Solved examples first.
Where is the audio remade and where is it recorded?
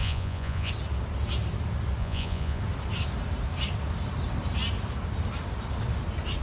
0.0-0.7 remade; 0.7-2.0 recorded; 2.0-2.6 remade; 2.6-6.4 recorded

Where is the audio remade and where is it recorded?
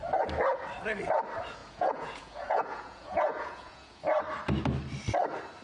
0.0-1.6 recorded; 1.6-4.0 remade; 4.0-5.6 recorded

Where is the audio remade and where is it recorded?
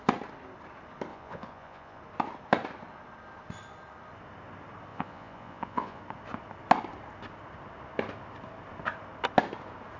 0.0-1.1 recorded; 1.1-2.0 remade; 2.0-4.9 recorded; 4.9-6.0 remade; 6.0-10.0 recorded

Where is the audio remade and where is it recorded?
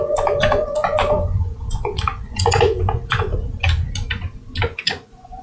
0.0-3.3 remade; 3.3-4.6 recorded; 4.6-5.4 remade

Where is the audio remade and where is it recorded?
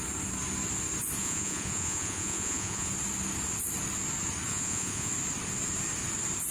0.0-1.2 recorded; 1.2-2.9 remade; 2.9-4.5 recorded; 4.5-5.1 remade; 5.1-6.5 recorded